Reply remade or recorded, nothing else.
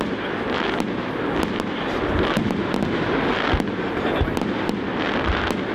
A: recorded